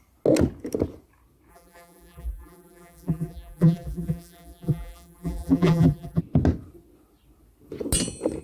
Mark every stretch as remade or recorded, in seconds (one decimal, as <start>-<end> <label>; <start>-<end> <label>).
0.0-1.5 recorded; 1.5-6.2 remade; 6.2-8.4 recorded